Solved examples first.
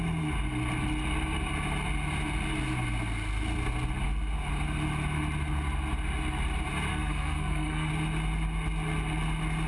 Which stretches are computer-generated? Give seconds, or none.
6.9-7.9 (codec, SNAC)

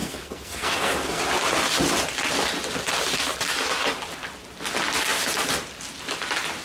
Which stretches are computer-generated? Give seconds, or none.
0.0-1.2 (codec, SNAC)

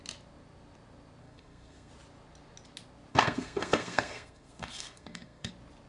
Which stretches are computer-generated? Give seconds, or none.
1.2-1.9 (codec, SNAC); 3.1-5.5

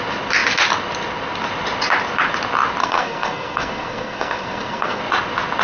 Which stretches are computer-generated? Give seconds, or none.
2.8-5.0 (codec, SNAC)